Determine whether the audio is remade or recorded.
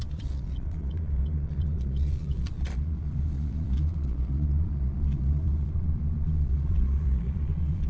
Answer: remade